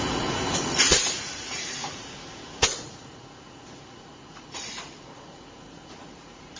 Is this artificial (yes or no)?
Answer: yes